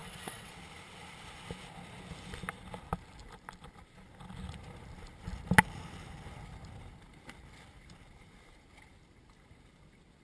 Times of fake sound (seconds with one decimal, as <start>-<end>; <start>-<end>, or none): 0.0-0.5